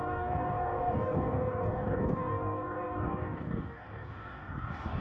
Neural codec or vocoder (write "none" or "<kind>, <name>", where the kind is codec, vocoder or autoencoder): codec, DAC